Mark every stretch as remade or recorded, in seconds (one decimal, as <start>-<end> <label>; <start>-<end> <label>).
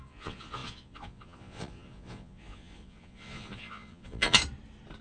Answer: 0.0-4.4 remade; 4.4-5.0 recorded